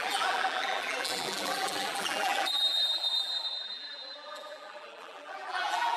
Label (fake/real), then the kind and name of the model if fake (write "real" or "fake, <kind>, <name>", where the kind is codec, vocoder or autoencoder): fake, vocoder, BigVGAN v2